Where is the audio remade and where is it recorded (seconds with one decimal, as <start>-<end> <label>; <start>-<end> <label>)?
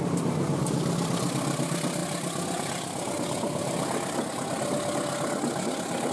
0.0-6.1 recorded